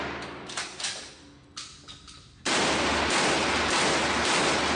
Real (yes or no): yes